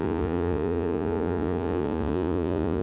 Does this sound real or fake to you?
fake